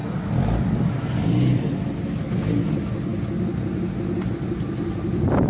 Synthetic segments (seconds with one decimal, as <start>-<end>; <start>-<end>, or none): none